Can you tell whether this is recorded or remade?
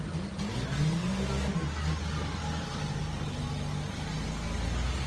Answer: recorded